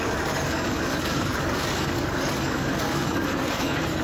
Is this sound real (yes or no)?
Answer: no